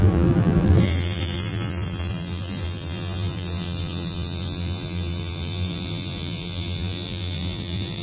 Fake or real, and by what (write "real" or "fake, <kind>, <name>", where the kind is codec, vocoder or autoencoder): fake, vocoder, BigVGAN v2